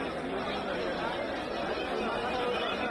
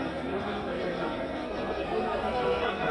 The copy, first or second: second